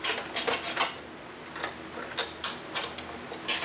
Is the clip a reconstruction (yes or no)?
no